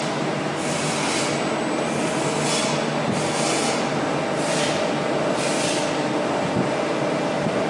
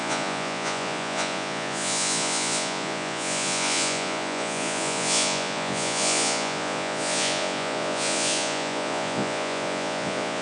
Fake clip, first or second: second